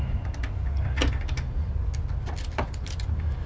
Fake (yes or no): no